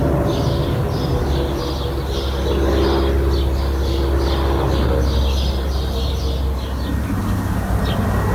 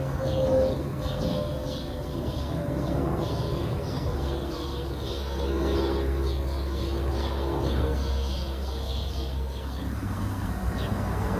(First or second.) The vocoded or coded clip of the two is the second